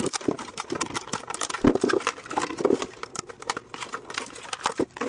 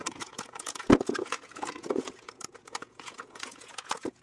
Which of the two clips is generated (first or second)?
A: second